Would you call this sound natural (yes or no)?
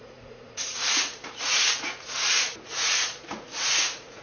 no